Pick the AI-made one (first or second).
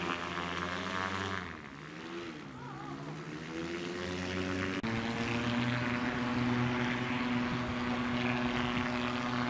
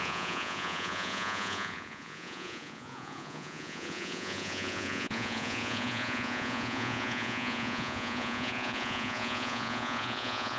second